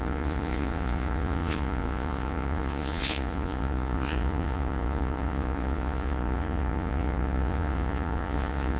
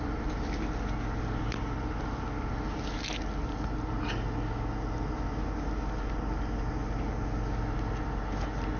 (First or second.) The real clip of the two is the second